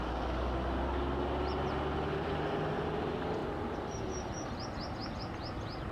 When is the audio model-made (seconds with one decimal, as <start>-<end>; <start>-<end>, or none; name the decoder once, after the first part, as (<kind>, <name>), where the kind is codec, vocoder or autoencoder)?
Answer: none